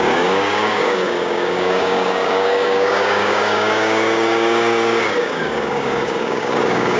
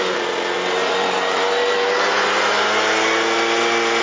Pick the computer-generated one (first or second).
first